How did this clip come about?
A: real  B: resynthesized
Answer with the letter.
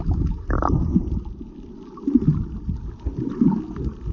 A